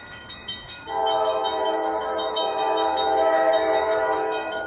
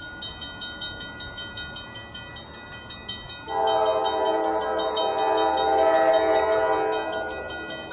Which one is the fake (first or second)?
first